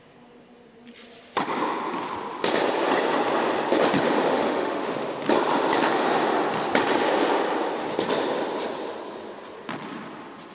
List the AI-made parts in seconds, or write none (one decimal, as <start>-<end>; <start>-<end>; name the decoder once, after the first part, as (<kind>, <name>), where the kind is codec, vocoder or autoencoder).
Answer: 4.3-5.0 (autoencoder, DAC-VAE)